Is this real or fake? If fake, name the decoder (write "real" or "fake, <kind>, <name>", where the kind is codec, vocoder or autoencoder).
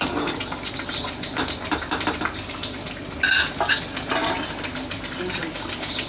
real